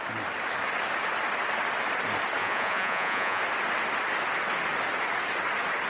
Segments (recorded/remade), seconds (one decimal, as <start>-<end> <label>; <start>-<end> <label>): 0.0-2.4 recorded; 2.4-3.4 remade; 3.4-5.9 recorded